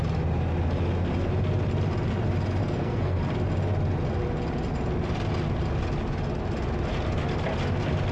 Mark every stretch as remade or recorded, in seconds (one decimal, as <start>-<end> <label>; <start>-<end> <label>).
0.0-2.6 recorded; 2.6-3.2 remade; 3.2-8.1 recorded